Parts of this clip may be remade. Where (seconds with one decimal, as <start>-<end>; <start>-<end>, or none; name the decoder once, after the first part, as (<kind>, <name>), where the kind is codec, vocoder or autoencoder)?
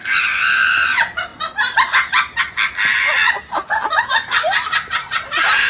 0.0-1.3 (vocoder, BigVGAN v2); 4.0-5.7